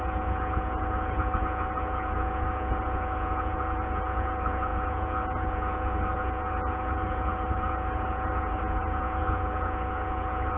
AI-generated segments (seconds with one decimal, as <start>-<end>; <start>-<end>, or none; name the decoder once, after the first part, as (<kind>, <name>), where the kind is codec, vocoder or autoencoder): 0.0-10.6 (vocoder, Vocos)